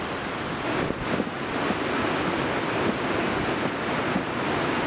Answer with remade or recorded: remade